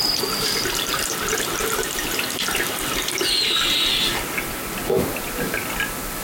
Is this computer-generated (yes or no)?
no